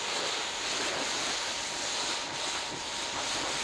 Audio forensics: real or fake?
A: real